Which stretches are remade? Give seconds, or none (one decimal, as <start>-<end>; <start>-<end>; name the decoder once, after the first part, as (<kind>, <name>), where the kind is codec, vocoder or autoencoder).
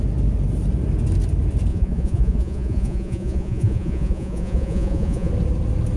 1.7-5.3 (vocoder, Vocos)